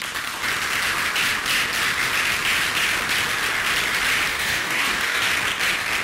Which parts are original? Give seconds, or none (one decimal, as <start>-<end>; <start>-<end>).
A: 0.0-4.3; 5.3-6.0